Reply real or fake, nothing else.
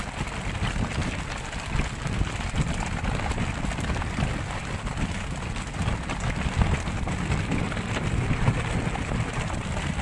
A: real